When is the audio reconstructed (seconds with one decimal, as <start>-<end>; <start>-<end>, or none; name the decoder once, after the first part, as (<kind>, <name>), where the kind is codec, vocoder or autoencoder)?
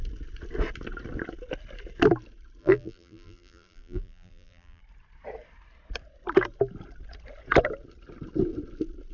2.6-4.8 (vocoder, BigVGAN v2)